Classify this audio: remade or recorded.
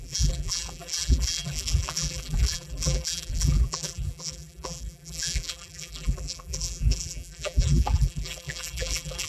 remade